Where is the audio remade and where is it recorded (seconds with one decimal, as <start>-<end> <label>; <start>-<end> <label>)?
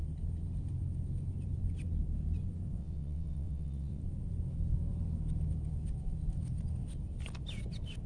0.0-2.8 recorded; 2.8-4.0 remade; 4.0-8.1 recorded